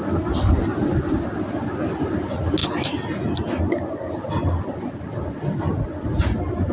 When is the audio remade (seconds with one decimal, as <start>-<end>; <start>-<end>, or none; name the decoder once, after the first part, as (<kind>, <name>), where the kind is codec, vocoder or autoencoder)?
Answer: none